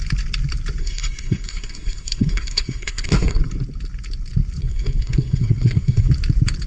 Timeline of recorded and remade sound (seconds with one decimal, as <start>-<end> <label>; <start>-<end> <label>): 0.0-0.8 recorded; 0.8-3.4 remade; 3.4-4.6 recorded; 4.6-6.1 remade; 6.1-6.7 recorded